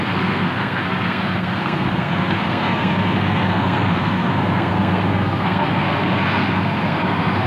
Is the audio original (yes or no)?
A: no